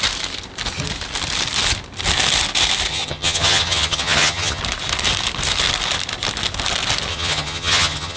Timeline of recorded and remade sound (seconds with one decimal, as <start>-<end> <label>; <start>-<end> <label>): 0.0-2.9 recorded; 2.9-4.6 remade; 4.6-7.1 recorded; 7.1-8.2 remade